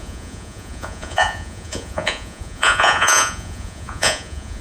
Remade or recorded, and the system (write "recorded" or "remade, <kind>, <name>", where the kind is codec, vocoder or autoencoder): remade, vocoder, Vocos